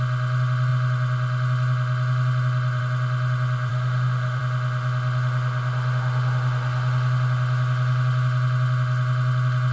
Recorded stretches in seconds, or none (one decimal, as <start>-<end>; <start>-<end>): 0.0-3.7; 4.4-9.7